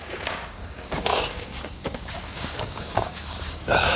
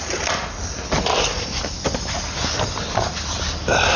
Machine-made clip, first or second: first